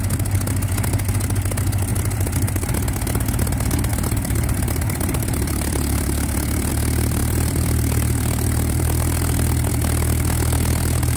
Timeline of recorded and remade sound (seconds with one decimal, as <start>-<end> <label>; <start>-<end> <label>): 0.0-1.9 recorded; 1.9-2.5 remade; 2.5-3.9 recorded; 3.9-6.7 remade; 6.7-7.2 recorded; 7.2-9.7 remade; 9.7-11.2 recorded